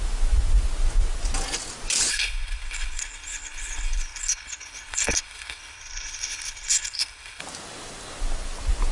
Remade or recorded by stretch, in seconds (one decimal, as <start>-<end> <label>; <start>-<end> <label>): 0.0-2.1 recorded; 2.1-7.4 remade; 7.4-8.9 recorded